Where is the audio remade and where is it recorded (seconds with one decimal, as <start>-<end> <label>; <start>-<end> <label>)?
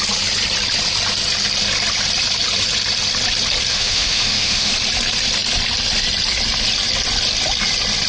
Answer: 0.0-3.7 recorded; 3.7-4.7 remade; 4.7-8.1 recorded